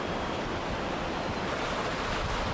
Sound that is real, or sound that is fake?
real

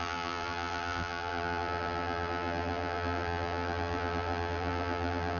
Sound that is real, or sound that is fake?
fake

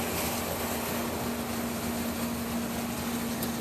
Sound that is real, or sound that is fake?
real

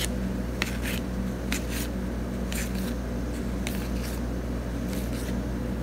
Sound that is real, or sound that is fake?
real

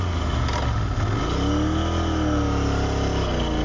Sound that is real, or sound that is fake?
real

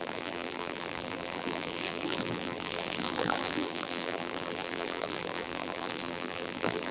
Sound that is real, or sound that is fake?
fake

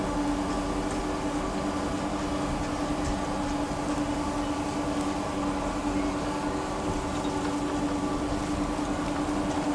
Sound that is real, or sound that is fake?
real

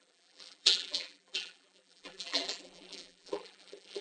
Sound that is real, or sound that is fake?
fake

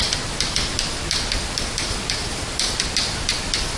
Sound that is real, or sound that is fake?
real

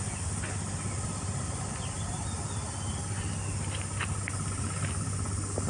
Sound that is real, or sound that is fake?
real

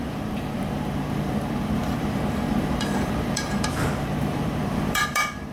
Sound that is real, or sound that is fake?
fake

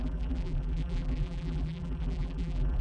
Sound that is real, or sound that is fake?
fake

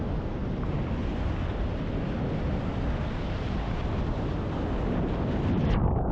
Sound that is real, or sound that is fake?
real